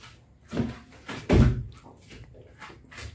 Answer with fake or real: real